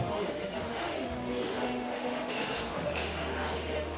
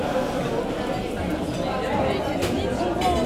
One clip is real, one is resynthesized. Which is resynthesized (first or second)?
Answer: first